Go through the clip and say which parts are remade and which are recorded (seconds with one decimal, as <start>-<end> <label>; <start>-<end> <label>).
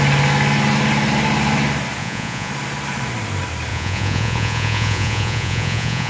0.0-2.0 recorded; 2.0-2.5 remade; 2.5-3.7 recorded; 3.7-6.1 remade